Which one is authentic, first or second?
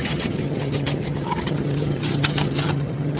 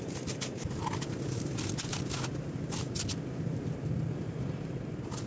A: second